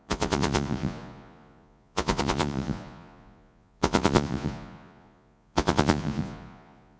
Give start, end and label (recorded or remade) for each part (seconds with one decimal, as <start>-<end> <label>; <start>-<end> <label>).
0.0-7.0 remade